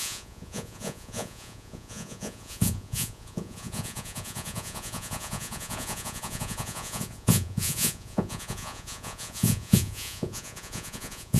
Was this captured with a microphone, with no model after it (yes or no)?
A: no